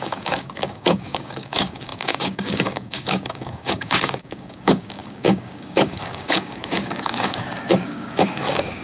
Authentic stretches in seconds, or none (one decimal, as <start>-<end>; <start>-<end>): none